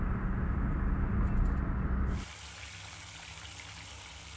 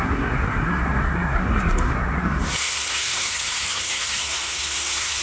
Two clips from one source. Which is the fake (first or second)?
second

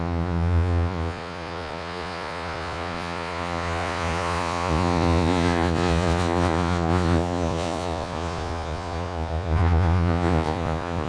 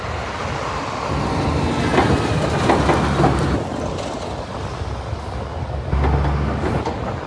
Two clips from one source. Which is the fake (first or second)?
first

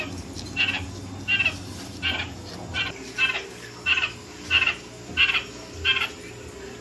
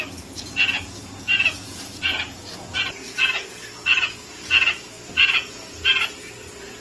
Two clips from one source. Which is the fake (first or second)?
second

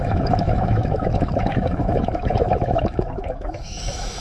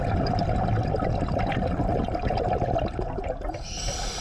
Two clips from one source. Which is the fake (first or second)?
first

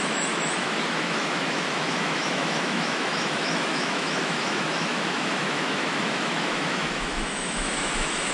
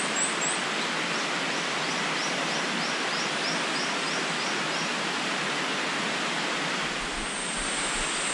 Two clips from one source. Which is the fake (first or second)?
first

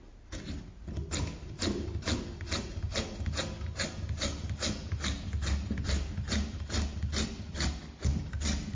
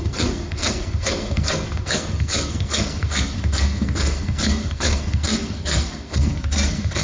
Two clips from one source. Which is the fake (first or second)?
second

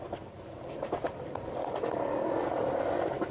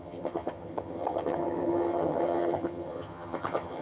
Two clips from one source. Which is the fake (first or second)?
second